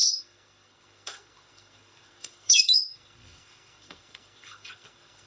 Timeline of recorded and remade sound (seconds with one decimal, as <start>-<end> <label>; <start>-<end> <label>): 0.0-5.3 remade